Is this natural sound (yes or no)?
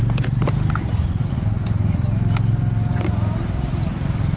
yes